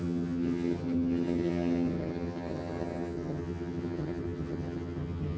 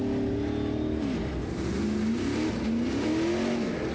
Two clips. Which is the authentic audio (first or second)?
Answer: second